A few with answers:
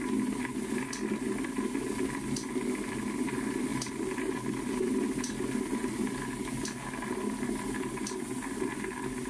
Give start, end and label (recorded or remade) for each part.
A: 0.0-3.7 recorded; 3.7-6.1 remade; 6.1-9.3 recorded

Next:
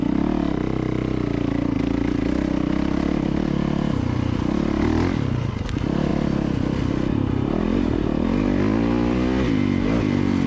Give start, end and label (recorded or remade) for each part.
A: 0.0-10.5 recorded

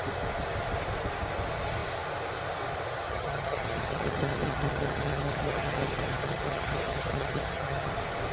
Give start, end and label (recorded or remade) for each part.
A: 0.0-3.1 recorded; 3.1-7.9 remade; 7.9-8.3 recorded

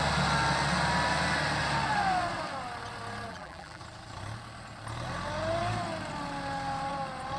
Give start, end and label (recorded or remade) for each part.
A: 0.0-3.3 recorded; 3.3-3.8 remade; 3.8-7.4 recorded

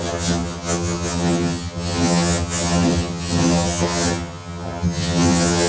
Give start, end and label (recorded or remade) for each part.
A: 0.0-5.7 remade

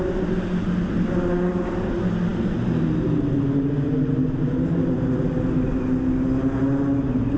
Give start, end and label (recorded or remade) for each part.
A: 0.0-7.4 recorded

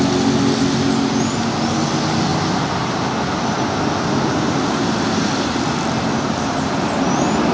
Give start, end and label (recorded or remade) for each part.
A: 0.0-7.5 recorded

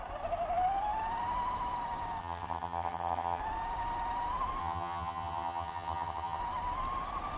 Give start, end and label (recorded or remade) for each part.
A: 0.0-2.2 recorded; 2.2-3.4 remade; 3.4-4.6 recorded; 4.6-6.4 remade; 6.4-7.4 recorded